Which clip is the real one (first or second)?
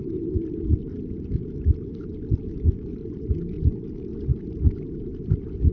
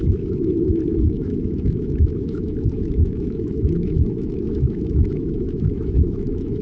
first